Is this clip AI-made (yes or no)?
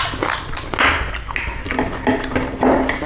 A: no